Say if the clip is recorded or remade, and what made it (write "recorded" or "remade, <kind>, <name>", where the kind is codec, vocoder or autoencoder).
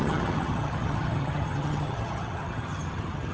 remade, vocoder, HiFi-GAN